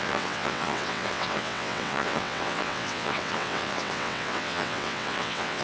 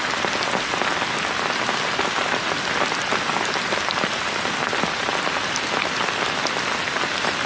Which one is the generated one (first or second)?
first